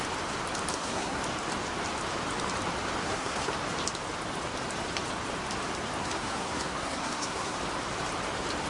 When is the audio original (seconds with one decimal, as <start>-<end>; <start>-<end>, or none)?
0.0-0.7; 1.2-3.0; 3.5-6.0; 7.6-8.7